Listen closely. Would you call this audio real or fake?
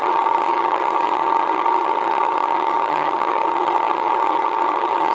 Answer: fake